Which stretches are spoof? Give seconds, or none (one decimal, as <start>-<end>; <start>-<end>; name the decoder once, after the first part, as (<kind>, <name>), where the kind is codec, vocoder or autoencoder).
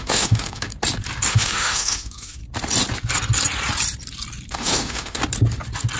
0.0-0.7 (autoencoder, DAC-VAE); 1.3-2.4; 4.5-5.2